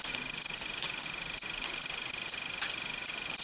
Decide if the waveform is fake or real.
real